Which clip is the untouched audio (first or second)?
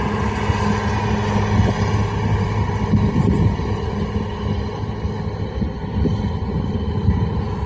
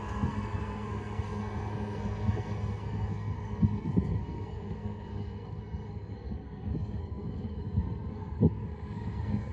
first